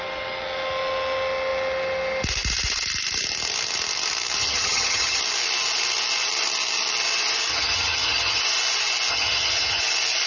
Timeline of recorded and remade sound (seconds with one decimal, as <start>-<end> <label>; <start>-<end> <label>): 0.0-4.4 recorded; 4.4-5.2 remade; 5.2-7.5 recorded; 7.5-8.4 remade; 8.4-9.1 recorded; 9.1-9.8 remade; 9.8-10.3 recorded